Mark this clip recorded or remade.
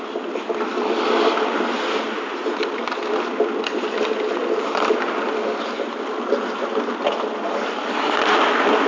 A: recorded